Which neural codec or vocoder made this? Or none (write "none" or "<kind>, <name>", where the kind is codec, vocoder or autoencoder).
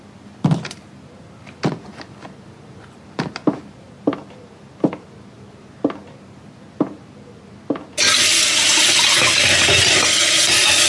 none